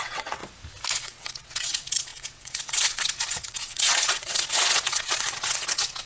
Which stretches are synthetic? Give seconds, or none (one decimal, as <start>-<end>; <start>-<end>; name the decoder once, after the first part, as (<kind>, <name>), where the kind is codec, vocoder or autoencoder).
0.0-0.4 (vocoder, WaveNeXt); 0.9-6.1